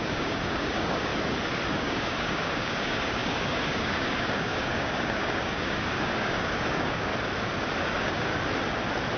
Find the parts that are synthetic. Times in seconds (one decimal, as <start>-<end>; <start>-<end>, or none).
0.0-1.1; 1.7-7.1; 7.8-8.3